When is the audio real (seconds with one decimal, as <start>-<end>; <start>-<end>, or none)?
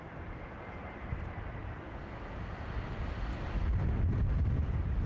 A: 0.0-5.1